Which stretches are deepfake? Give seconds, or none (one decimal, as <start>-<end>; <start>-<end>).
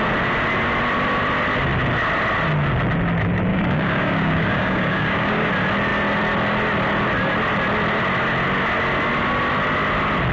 3.5-5.5